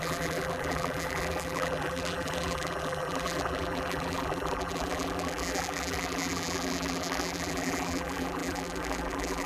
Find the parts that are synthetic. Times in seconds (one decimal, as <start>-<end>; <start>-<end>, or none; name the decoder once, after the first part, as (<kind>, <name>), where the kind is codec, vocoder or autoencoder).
0.0-9.5 (vocoder, BigVGAN v2)